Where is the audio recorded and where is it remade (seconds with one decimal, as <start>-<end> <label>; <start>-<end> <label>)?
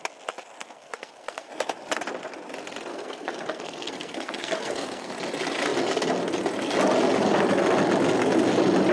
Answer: 0.0-0.6 recorded; 0.6-1.5 remade; 1.5-2.9 recorded; 2.9-5.1 remade; 5.1-8.9 recorded